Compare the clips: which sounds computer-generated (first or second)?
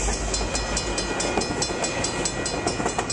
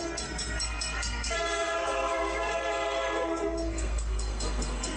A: second